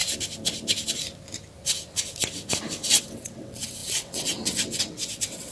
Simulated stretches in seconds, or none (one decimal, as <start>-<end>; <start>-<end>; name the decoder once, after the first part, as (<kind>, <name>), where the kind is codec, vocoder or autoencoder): 3.0-5.5 (vocoder, WaveNeXt)